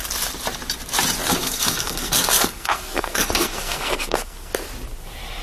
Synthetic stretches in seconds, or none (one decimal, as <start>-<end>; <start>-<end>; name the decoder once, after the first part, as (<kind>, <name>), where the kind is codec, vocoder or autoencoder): 1.4-4.5 (codec, SNAC)